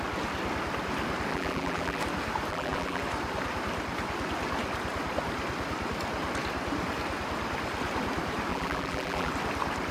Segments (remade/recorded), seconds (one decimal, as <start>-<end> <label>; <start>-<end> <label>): 0.0-1.3 recorded; 1.3-2.0 remade; 2.0-2.5 recorded; 2.5-3.0 remade; 3.0-8.5 recorded; 8.5-9.3 remade; 9.3-9.9 recorded